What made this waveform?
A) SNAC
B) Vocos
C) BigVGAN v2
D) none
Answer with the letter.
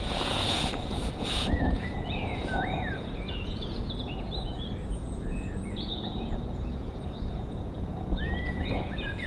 B